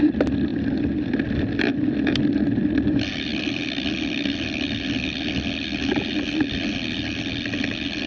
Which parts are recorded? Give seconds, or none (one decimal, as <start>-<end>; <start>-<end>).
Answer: 0.0-8.1